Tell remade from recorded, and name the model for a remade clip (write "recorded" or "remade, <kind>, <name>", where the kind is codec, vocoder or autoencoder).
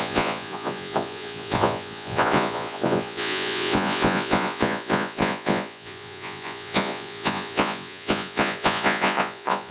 remade, vocoder, Vocos